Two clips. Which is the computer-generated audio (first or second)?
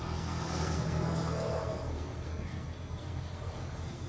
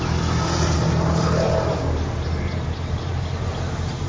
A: first